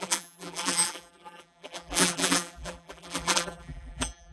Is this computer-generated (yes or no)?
yes